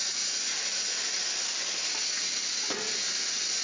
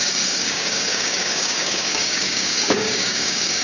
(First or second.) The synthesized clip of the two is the second